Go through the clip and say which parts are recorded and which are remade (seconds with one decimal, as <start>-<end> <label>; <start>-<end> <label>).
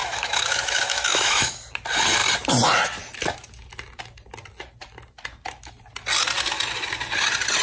0.0-1.5 remade; 1.5-7.6 recorded